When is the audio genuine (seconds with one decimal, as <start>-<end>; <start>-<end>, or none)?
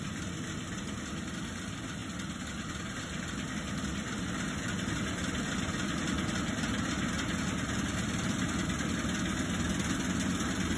0.0-10.8